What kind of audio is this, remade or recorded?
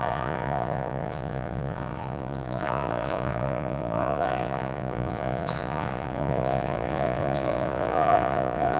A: remade